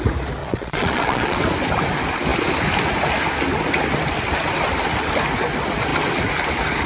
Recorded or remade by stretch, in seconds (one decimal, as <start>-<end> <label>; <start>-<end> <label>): 0.0-0.4 recorded; 0.4-1.4 remade; 1.4-6.9 recorded